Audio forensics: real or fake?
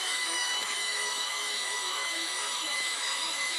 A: fake